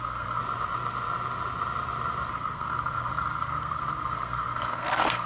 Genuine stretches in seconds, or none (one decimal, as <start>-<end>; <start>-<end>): 0.4-2.3